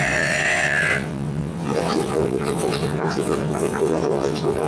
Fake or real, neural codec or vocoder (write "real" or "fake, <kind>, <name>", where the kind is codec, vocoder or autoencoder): fake, vocoder, WaveNeXt